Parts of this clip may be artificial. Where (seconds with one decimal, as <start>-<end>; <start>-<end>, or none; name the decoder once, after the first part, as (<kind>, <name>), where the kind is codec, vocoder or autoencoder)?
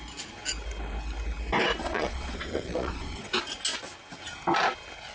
1.8-3.3 (vocoder, Vocos)